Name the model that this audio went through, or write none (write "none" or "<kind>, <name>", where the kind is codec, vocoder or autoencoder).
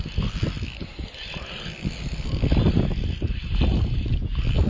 none